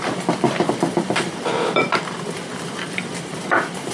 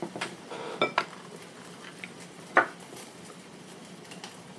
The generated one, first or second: first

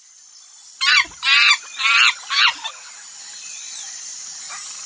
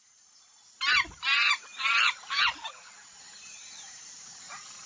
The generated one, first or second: second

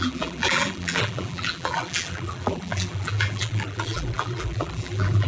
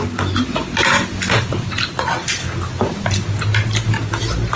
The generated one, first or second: first